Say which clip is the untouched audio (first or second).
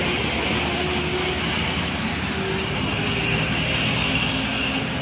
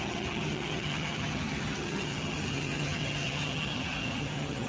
first